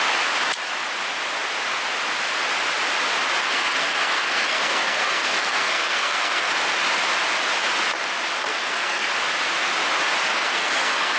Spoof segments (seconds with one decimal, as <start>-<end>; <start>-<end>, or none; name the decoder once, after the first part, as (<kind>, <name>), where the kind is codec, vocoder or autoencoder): 3.4-6.5 (codec, SNAC); 8.5-9.1; 10.3-11.2